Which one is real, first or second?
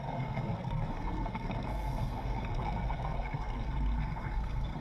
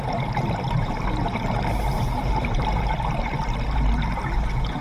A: second